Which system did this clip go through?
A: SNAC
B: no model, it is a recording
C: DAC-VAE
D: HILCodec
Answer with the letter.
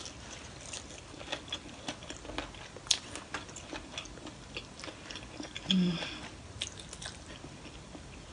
B